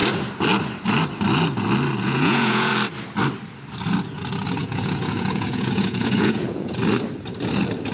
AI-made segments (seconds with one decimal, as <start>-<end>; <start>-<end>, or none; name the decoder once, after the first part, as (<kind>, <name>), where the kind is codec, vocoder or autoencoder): 2.0-2.7 (vocoder, Vocos); 4.6-6.8